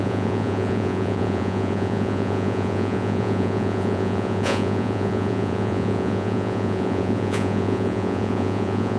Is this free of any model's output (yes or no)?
no